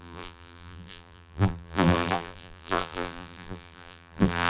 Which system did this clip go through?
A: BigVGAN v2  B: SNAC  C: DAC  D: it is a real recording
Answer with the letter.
A